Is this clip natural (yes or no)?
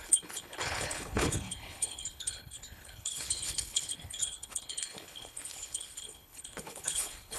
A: no